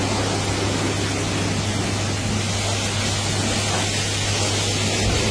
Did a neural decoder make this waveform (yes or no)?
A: no